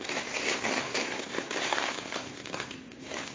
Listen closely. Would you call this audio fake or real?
fake